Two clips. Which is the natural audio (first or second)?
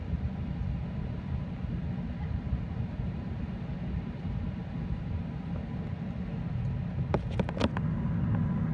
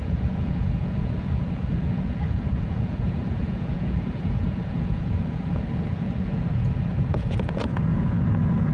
first